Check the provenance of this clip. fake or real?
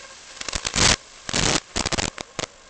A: real